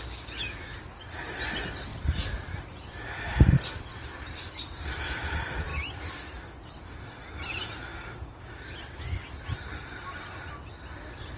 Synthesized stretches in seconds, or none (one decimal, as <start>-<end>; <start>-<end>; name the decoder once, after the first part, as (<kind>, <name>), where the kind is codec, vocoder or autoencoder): 0.4-0.9 (vocoder, BigVGAN v2); 1.9-4.5